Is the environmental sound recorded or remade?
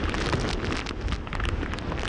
recorded